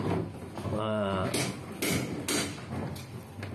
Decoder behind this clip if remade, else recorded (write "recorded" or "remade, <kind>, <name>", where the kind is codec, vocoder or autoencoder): recorded